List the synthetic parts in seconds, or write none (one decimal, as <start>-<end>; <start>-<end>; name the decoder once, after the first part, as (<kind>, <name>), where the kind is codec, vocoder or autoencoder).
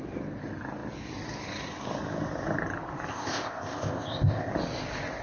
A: 3.1-4.5 (codec, ZipCodec)